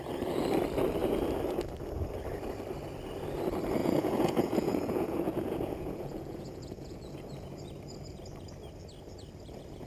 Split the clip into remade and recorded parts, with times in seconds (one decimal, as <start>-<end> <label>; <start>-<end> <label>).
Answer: 0.0-3.8 recorded; 3.8-7.6 remade; 7.6-9.9 recorded